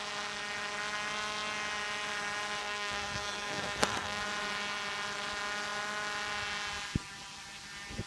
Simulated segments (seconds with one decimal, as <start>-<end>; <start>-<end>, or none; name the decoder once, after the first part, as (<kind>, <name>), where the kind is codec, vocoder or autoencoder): 2.6-4.2 (codec, SNAC)